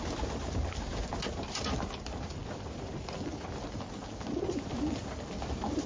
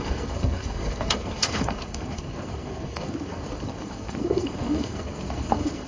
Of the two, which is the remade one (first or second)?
second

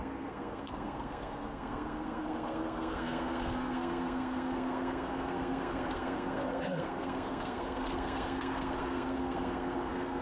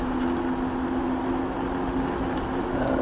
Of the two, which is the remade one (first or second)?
first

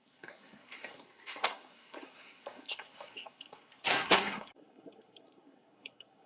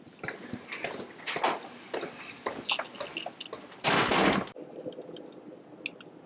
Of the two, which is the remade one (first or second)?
first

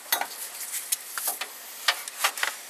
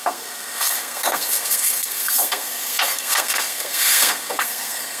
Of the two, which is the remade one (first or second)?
second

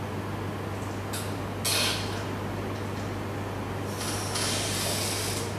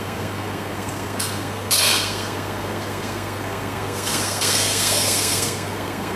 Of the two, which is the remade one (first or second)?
second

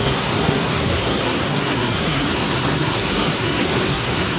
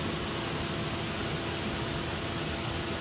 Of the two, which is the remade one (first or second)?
first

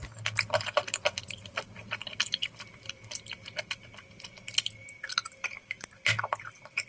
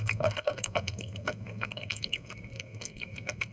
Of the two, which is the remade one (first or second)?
second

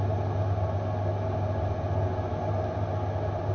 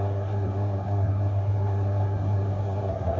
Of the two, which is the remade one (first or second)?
second